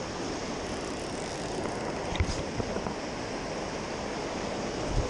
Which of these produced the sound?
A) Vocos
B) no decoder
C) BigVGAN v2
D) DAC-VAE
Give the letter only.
B